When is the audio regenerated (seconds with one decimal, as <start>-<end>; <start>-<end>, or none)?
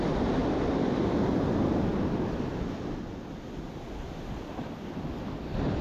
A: 0.4-1.2